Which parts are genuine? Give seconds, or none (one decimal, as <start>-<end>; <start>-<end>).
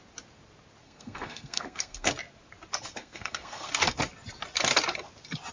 0.0-0.8; 2.1-3.0; 3.7-5.5